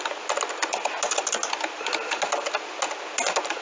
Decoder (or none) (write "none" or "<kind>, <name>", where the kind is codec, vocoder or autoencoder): none